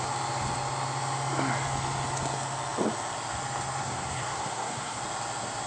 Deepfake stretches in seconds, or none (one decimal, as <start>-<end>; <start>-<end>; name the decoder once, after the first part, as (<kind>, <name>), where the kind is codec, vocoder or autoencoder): 3.8-5.0 (codec, SNAC)